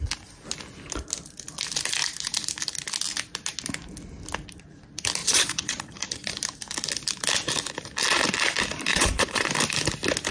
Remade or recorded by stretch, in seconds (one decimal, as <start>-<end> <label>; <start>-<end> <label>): 0.0-5.2 recorded; 5.2-6.3 remade; 6.3-8.9 recorded; 8.9-9.5 remade; 9.5-10.3 recorded

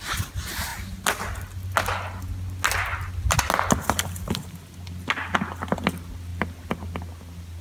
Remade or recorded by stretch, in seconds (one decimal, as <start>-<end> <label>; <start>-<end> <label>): 0.0-7.6 recorded